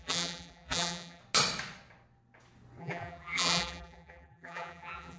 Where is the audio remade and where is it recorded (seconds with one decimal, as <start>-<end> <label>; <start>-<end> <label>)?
0.0-1.2 remade; 1.2-2.8 recorded; 2.8-5.2 remade